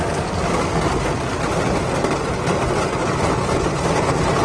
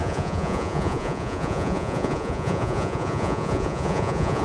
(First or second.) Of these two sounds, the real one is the first